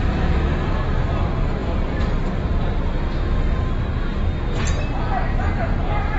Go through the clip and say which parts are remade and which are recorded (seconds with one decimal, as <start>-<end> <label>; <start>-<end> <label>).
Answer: 0.0-6.2 recorded